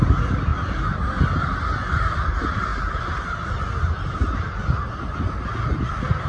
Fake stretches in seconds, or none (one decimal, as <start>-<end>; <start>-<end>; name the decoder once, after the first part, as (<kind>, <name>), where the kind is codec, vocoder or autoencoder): none